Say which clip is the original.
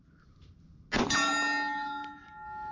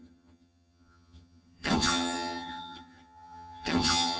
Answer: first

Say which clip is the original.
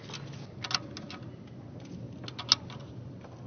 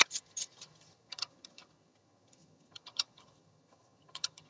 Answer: first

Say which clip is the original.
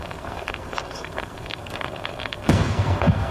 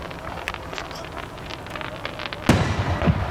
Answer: second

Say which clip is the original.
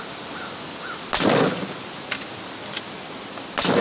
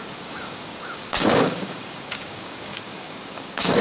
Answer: first